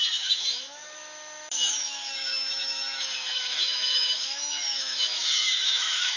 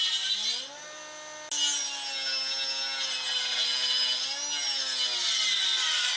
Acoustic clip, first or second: second